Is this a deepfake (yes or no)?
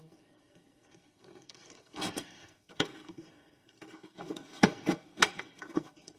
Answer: yes